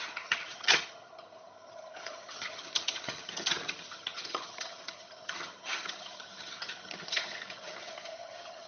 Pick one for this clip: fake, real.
fake